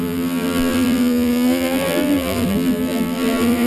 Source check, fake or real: fake